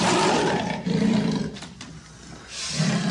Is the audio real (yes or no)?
no